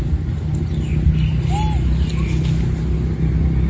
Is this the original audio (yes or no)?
yes